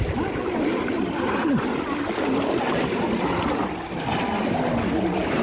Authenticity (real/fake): real